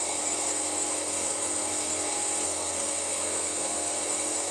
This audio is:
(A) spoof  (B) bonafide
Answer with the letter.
A